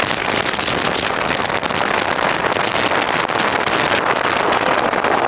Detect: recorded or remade recorded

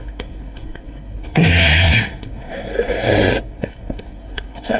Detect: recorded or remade remade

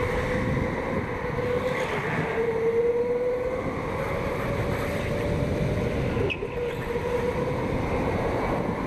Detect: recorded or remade recorded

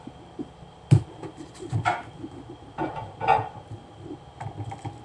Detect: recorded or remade recorded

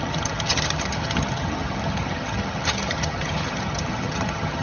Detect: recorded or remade remade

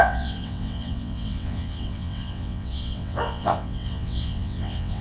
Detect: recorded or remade remade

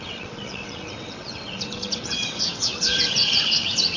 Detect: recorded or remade remade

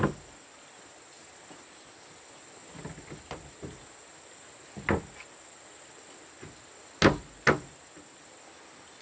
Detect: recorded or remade recorded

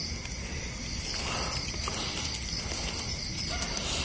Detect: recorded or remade recorded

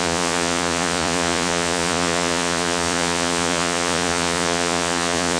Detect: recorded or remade remade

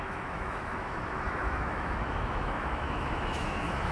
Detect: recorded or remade remade